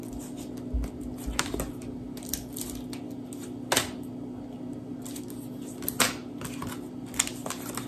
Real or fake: real